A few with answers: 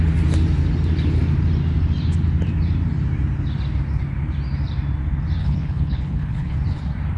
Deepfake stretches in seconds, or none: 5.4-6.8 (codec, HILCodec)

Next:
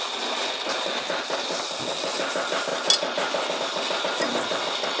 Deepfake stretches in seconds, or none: none

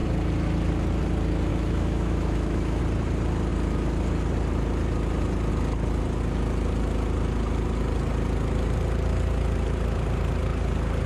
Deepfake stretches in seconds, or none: 1.5-2.8 (autoencoder, DAC-VAE)

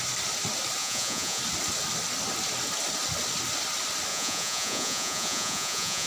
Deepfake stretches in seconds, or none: 0.8-1.4 (vocoder, Vocos); 4.1-6.1

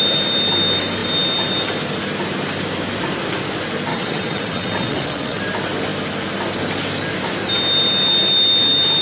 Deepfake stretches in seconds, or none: 3.9-5.4 (vocoder, WaveNeXt)